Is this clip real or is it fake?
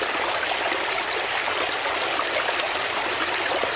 real